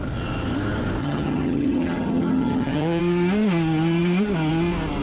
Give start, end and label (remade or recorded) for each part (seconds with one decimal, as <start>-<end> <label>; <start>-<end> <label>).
0.0-1.0 recorded; 1.0-3.0 remade; 3.0-5.0 recorded